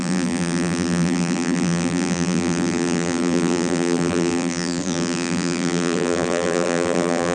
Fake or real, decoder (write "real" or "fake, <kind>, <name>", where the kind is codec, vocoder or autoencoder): fake, vocoder, BigVGAN v2